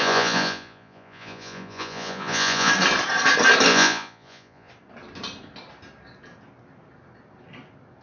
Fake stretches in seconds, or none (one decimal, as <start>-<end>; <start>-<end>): 0.0-2.7; 3.7-4.7